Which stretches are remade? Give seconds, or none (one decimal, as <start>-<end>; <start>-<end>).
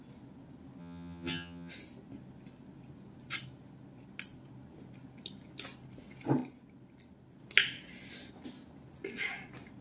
0.8-1.7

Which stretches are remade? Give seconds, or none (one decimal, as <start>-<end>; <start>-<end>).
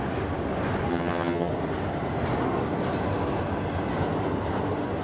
0.9-1.5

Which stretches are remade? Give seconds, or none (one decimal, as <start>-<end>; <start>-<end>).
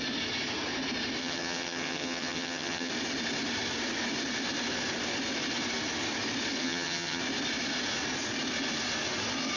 1.2-2.9; 6.6-7.2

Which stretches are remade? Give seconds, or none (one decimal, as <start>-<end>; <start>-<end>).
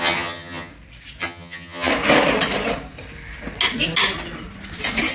0.0-0.7; 1.2-1.9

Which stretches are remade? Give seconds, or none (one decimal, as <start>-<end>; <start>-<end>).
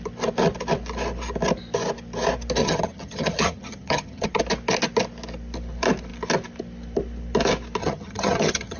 2.6-4.4; 7.8-8.8